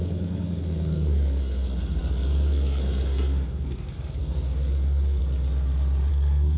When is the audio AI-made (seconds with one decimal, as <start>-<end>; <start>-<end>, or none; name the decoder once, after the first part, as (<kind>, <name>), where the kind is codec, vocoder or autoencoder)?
0.0-5.2 (codec, SNAC); 6.1-6.6